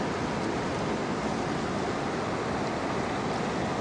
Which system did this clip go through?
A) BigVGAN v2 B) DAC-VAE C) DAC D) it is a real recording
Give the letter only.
D